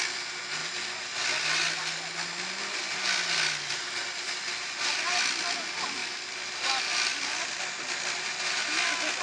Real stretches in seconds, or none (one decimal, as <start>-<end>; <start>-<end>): 0.0-6.0; 6.6-7.1; 7.6-9.2